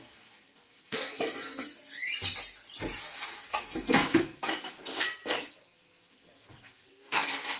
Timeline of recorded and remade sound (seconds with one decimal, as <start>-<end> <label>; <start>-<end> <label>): 0.0-2.1 remade; 2.1-3.0 recorded; 3.0-7.6 remade